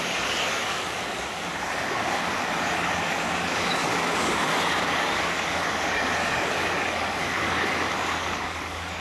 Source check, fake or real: fake